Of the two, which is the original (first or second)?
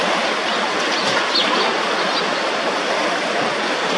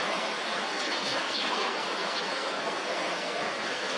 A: first